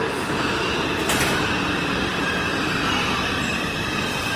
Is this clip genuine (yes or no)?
no